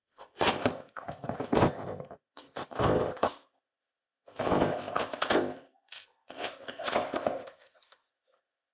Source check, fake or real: fake